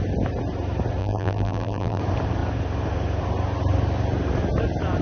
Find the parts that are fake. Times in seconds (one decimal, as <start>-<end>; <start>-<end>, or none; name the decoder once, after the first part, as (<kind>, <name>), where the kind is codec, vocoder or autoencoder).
1.0-2.0 (vocoder, BigVGAN v2)